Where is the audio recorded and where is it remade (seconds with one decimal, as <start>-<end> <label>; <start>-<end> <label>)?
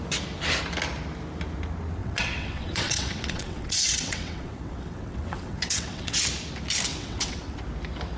0.0-2.0 recorded; 2.0-6.2 remade; 6.2-6.9 recorded; 6.9-7.6 remade; 7.6-8.2 recorded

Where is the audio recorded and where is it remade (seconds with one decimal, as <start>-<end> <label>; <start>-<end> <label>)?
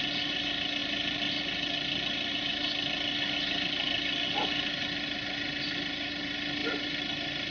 0.0-7.5 recorded